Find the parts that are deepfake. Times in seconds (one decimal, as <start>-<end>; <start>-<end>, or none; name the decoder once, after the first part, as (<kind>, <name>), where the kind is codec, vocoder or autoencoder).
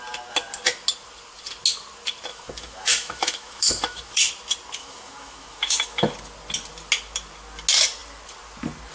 2.3-4.3 (autoencoder, DAC-VAE); 4.8-6.1